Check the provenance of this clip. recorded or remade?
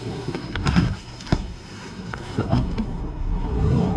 remade